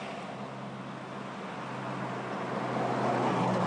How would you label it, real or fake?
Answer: real